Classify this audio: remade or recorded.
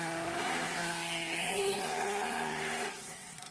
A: remade